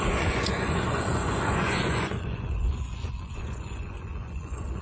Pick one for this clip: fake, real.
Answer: fake